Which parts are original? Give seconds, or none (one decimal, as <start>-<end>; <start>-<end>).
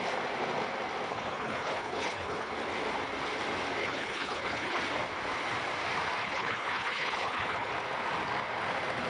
0.0-1.1; 2.5-3.8; 4.8-6.2; 7.7-9.1